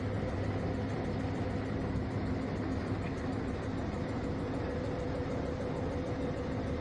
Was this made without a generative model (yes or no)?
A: yes